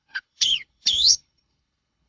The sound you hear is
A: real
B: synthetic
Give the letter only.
B